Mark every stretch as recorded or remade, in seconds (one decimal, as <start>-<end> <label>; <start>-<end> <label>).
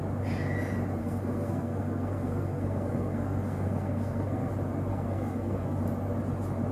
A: 0.0-1.0 recorded; 1.0-4.5 remade; 4.5-4.9 recorded; 4.9-5.8 remade; 5.8-6.7 recorded